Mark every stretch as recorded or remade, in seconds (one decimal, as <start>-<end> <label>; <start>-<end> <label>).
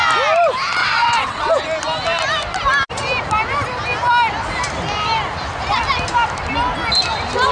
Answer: 0.0-0.8 recorded; 0.8-1.5 remade; 1.5-7.5 recorded